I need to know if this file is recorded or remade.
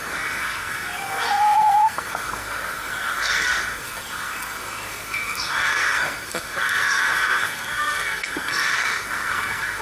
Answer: remade